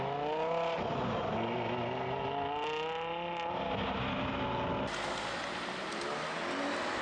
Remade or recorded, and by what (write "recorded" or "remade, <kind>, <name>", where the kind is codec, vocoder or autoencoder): recorded